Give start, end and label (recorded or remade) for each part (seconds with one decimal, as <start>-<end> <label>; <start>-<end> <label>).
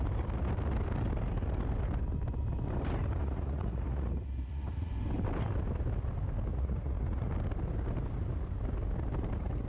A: 0.0-3.2 recorded; 3.2-4.9 remade; 4.9-6.5 recorded; 6.5-7.3 remade; 7.3-9.7 recorded